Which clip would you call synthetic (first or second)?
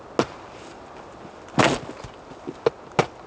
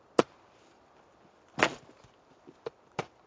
second